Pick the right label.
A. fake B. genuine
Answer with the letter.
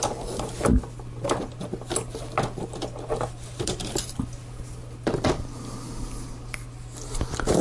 B